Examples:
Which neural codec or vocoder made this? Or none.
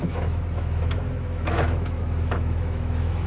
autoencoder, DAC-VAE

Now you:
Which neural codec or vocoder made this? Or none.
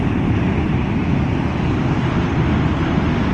none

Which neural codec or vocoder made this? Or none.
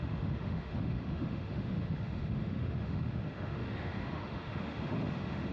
autoencoder, DAC-VAE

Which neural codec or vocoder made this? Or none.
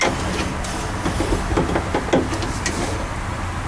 none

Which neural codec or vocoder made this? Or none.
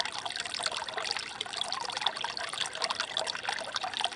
none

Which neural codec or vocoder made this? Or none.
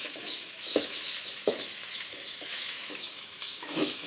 autoencoder, DAC-VAE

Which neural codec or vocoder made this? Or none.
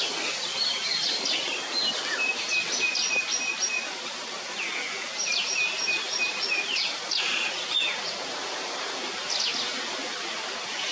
none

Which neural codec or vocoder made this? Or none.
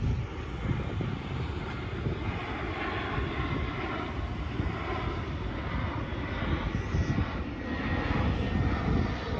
none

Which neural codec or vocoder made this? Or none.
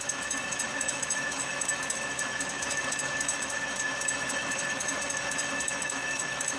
autoencoder, DAC-VAE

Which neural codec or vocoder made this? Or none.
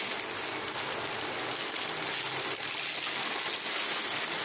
none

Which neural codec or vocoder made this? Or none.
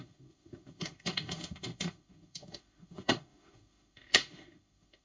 autoencoder, DAC-VAE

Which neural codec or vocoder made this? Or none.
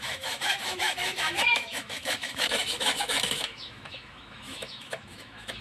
autoencoder, DAC-VAE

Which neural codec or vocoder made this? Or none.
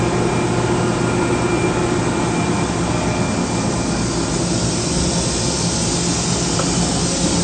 none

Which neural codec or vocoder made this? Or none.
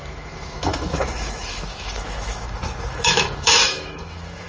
autoencoder, DAC-VAE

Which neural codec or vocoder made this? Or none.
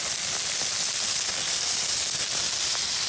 none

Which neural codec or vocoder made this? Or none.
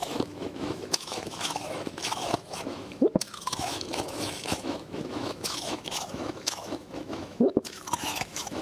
autoencoder, DAC-VAE